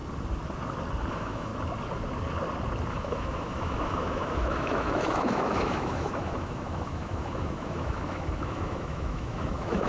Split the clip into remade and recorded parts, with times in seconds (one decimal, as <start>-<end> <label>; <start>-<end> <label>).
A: 0.0-1.1 recorded; 1.1-1.5 remade; 1.5-2.9 recorded; 2.9-9.9 remade